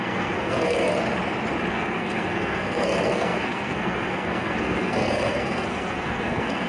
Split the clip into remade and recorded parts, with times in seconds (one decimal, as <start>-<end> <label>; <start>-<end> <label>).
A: 0.0-0.9 remade; 0.9-1.7 recorded; 1.7-6.7 remade

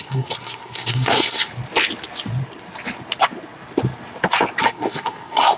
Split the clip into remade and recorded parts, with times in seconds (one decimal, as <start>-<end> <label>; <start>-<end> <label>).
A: 0.0-1.5 remade; 1.5-4.6 recorded; 4.6-5.6 remade